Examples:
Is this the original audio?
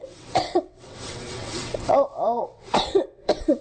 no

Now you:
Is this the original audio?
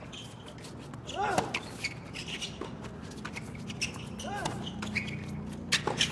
yes